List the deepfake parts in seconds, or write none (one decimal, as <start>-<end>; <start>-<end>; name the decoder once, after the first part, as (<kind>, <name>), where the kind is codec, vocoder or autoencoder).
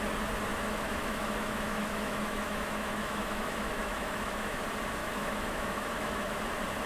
0.5-4.6 (autoencoder, DAC-VAE); 5.0-6.4